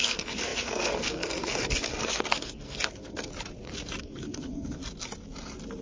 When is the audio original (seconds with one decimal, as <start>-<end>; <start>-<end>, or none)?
3.3-4.0; 4.8-5.8